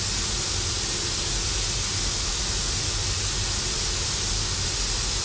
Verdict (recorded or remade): recorded